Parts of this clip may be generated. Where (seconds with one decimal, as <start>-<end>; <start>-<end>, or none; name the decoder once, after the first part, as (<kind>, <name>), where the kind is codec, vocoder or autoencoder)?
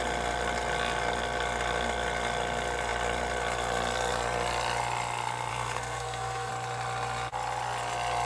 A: 5.5-6.5 (codec, SNAC)